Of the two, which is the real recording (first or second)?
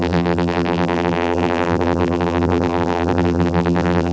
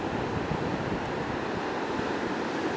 second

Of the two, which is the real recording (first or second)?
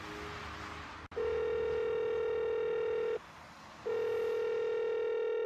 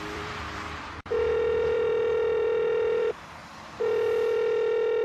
first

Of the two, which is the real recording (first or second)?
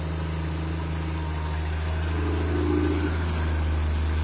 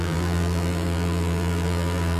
first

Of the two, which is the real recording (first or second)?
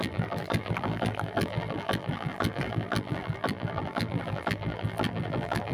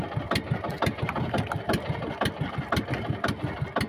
second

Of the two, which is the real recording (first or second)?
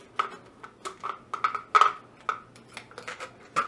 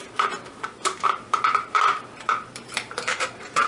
first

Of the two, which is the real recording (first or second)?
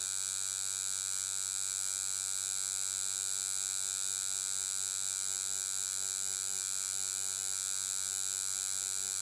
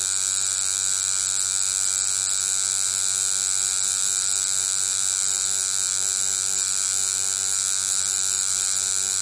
first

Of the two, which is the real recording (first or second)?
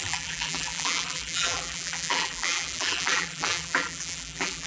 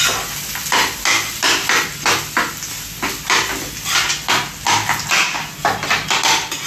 second